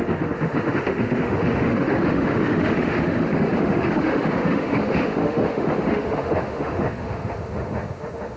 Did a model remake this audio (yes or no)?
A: yes